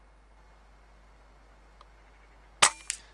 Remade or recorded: recorded